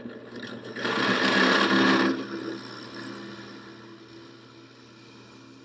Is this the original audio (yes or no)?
yes